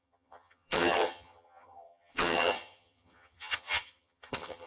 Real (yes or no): no